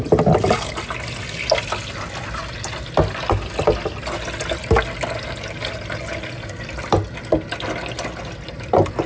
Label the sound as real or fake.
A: real